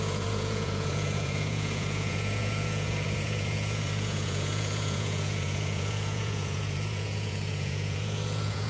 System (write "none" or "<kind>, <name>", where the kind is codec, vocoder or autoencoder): vocoder, Vocos